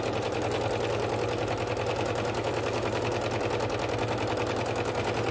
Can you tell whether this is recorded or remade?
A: recorded